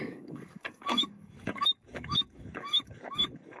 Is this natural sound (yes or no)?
no